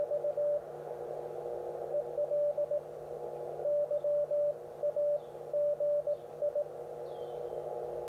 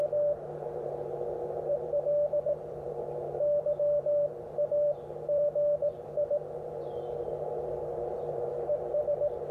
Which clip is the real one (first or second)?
first